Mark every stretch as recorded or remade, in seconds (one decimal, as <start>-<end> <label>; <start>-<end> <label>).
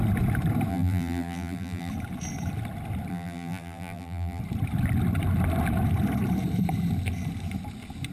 0.0-0.7 recorded; 0.7-1.9 remade; 1.9-3.1 recorded; 3.1-4.4 remade; 4.4-8.1 recorded